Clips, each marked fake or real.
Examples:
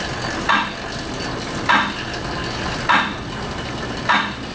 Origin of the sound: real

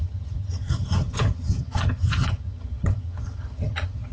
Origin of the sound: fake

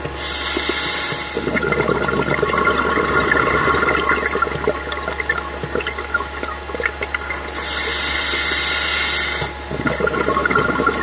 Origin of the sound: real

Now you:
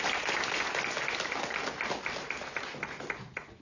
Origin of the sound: real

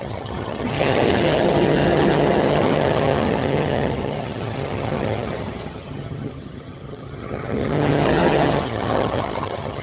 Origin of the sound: fake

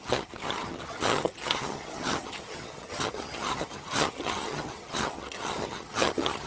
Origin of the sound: fake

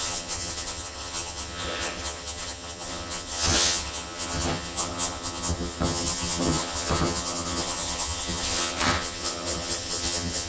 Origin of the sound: fake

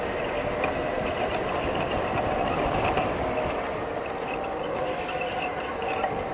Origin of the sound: real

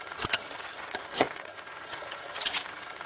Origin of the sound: fake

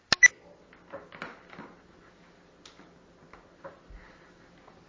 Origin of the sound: real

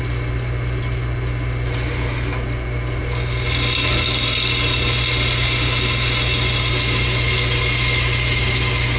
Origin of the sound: real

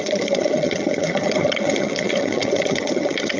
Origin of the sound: fake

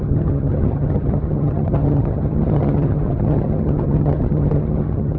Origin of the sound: fake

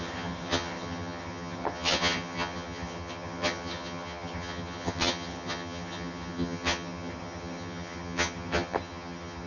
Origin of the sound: fake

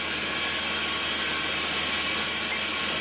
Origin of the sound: real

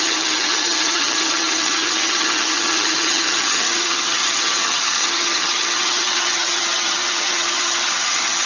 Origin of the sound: fake